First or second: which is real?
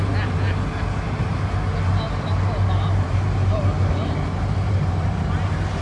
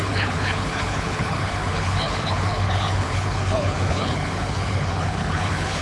first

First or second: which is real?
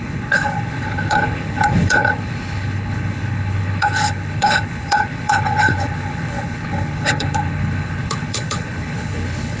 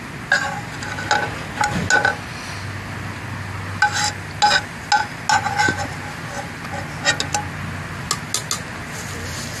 second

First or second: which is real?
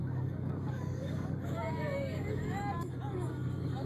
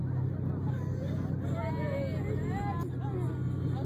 second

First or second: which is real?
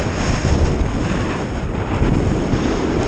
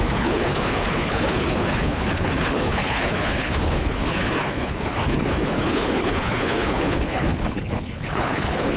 first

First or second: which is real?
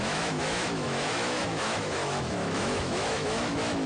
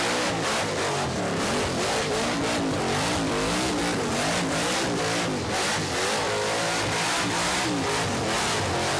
second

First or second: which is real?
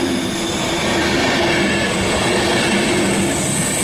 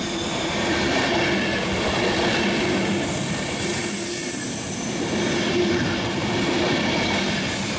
first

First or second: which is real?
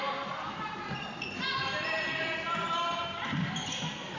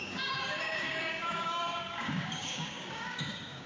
first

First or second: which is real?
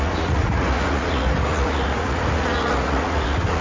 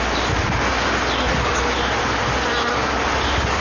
second